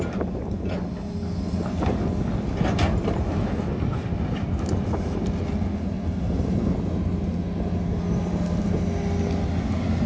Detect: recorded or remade recorded